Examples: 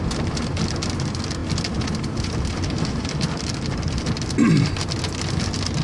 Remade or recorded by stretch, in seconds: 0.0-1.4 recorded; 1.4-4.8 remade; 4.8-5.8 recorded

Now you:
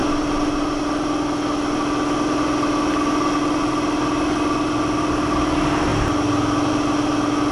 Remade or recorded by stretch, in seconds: 0.0-7.5 recorded

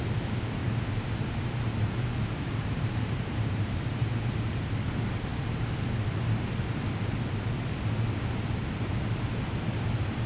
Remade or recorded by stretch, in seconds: 0.0-0.6 recorded; 0.6-4.7 remade; 4.7-10.3 recorded

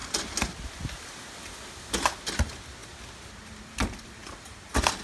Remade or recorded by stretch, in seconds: 0.0-5.0 recorded